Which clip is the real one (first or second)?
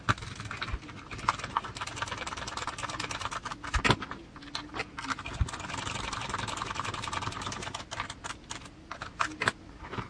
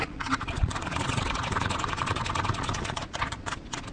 first